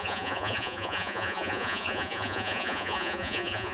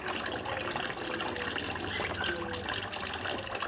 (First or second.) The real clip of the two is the second